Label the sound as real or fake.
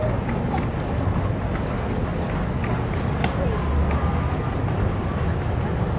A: real